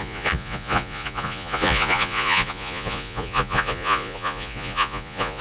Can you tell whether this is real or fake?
fake